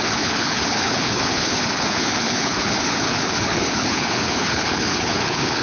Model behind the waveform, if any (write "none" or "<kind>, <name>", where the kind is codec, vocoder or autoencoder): codec, HILCodec